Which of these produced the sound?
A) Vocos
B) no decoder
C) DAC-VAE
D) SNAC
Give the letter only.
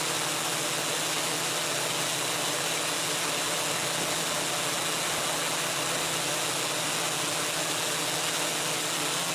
B